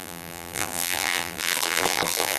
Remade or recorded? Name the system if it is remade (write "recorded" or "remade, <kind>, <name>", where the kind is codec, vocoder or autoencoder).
remade, vocoder, BigVGAN v2